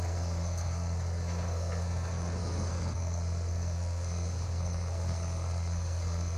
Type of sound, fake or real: fake